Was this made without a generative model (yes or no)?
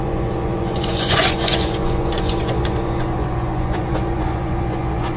no